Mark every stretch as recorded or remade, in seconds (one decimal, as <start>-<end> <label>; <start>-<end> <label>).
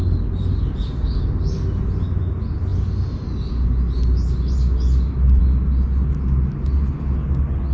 0.0-7.7 recorded